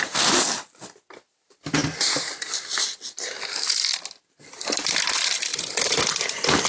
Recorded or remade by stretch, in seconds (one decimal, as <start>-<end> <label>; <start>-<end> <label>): 0.0-5.5 recorded; 5.5-6.1 remade; 6.1-6.7 recorded